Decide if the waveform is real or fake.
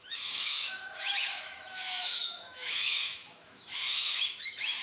fake